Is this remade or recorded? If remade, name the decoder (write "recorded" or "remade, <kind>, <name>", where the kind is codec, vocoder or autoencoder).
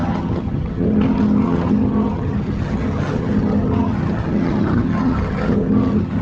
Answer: remade, vocoder, HiFi-GAN